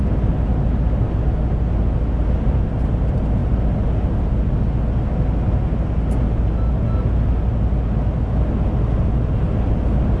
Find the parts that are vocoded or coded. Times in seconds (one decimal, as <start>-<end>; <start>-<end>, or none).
none